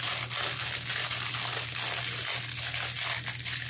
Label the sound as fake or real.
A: real